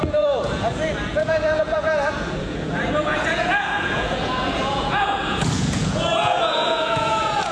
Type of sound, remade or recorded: remade